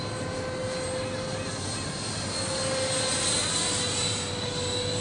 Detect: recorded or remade recorded